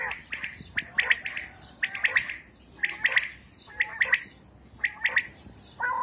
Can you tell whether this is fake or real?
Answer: real